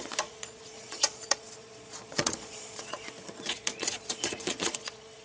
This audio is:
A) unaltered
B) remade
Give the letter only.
B